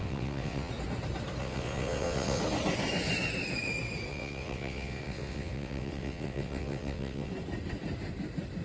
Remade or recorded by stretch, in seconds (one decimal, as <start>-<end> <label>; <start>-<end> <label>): 0.0-0.7 remade; 0.7-1.4 recorded; 1.4-2.4 remade; 2.4-4.1 recorded; 4.1-7.3 remade; 7.3-8.6 recorded